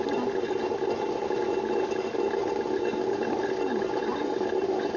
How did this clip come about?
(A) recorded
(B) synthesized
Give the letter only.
A